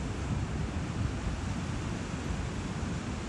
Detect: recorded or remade recorded